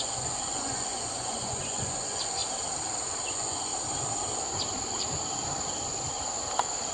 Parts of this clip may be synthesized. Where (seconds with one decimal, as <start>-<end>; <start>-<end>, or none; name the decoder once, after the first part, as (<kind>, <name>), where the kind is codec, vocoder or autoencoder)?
0.0-2.4 (vocoder, Vocos); 3.3-3.7